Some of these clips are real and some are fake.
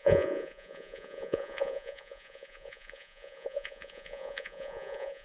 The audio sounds fake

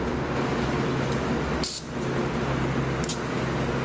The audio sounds real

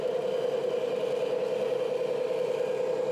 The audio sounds real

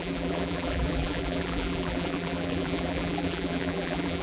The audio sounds fake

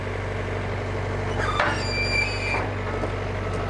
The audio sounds real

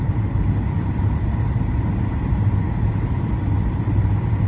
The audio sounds real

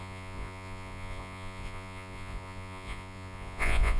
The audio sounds fake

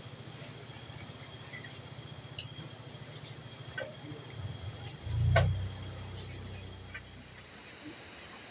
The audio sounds real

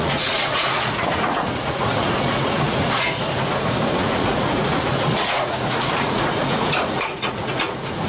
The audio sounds fake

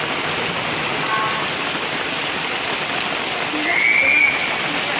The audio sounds real